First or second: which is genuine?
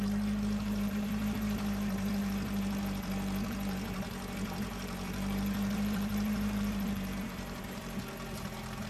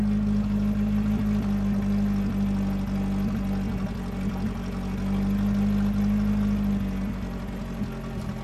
second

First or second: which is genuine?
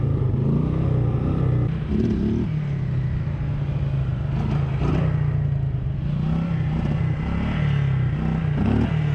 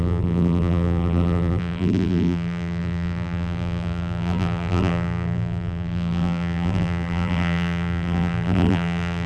first